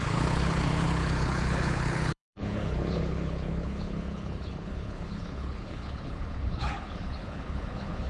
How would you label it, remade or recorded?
remade